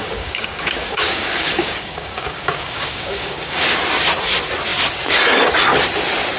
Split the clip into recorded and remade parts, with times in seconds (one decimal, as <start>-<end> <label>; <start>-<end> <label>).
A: 0.0-3.6 remade; 3.6-6.4 recorded